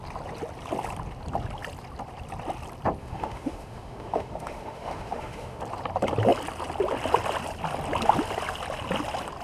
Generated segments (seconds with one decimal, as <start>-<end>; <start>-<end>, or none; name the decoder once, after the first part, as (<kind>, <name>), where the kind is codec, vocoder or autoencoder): 3.0-5.6 (autoencoder, DAC-VAE)